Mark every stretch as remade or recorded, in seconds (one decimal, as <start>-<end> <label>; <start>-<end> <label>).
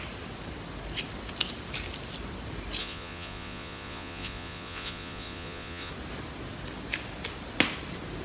0.0-2.8 recorded; 2.8-5.9 remade; 5.9-8.2 recorded